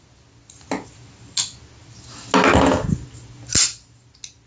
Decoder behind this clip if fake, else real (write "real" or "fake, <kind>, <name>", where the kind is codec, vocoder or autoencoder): real